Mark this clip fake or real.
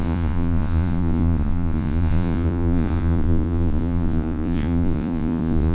fake